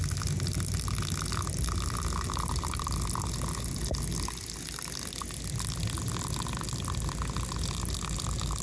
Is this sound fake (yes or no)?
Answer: no